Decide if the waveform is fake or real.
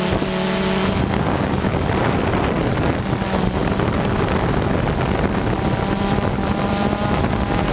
real